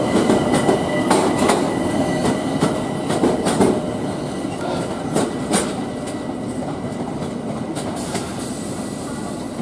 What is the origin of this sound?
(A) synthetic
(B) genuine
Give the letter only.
B